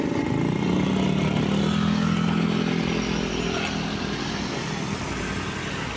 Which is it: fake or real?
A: real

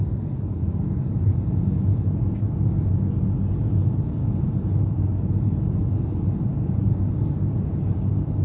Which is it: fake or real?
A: real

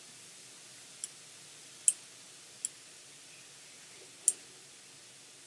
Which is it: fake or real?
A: real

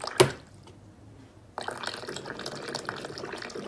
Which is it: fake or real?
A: real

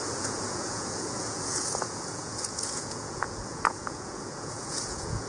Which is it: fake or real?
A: fake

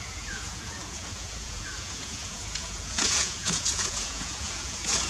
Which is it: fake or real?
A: fake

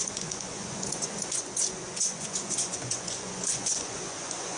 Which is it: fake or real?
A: fake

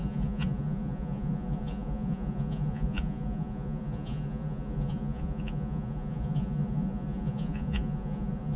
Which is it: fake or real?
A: fake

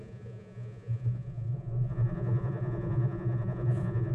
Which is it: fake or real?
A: fake